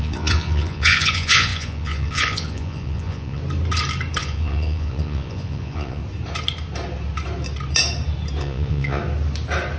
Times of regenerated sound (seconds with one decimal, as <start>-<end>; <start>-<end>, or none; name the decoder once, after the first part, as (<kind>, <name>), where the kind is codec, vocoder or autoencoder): 0.0-3.4 (vocoder, Vocos); 4.2-6.0; 8.4-9.0